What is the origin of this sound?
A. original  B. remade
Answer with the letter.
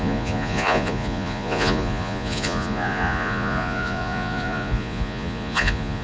B